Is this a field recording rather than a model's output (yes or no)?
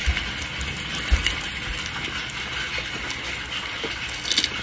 yes